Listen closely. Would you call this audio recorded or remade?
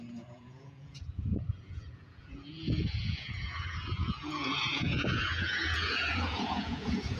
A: remade